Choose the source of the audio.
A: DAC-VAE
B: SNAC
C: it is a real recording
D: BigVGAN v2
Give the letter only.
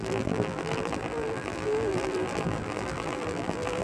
D